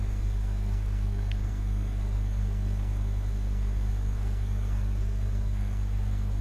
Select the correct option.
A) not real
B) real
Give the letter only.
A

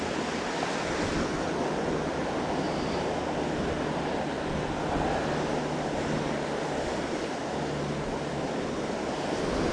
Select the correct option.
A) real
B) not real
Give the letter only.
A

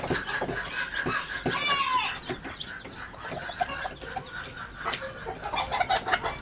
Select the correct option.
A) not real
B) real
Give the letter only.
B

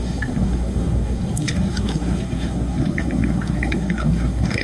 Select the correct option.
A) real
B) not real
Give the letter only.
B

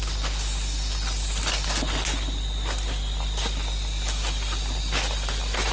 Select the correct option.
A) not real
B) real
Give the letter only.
B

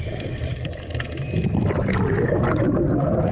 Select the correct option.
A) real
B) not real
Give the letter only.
A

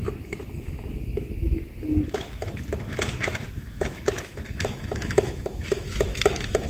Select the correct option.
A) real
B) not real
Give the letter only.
B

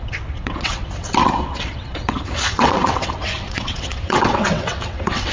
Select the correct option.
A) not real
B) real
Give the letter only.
A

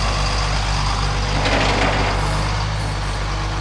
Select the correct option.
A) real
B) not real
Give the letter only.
A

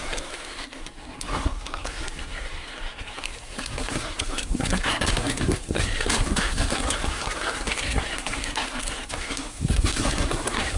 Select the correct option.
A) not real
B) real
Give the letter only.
A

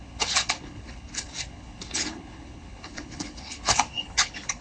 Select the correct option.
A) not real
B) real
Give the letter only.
A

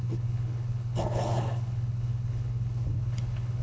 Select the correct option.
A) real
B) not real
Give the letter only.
B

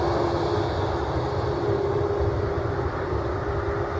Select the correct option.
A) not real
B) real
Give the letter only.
B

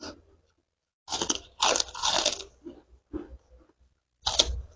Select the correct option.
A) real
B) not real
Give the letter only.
A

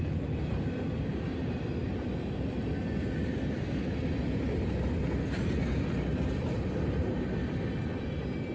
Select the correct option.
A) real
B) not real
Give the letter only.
A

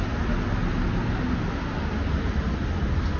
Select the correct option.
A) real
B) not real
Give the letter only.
A